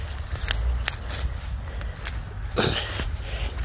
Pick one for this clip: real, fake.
real